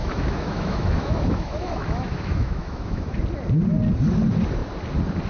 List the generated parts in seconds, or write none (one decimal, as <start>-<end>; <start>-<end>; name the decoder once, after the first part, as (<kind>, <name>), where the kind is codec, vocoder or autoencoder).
0.0-3.2 (autoencoder, DAC-VAE)